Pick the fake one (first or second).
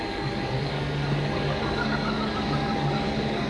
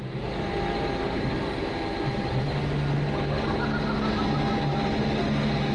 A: first